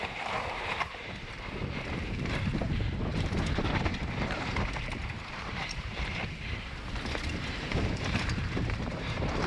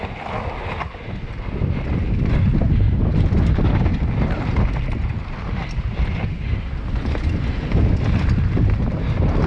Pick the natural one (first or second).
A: second